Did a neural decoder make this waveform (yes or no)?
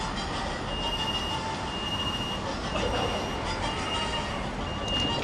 no